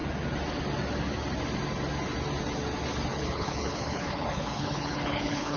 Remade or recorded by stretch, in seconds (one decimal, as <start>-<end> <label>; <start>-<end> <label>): 0.0-3.1 recorded; 3.1-5.6 remade